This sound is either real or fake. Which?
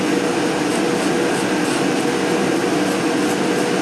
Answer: real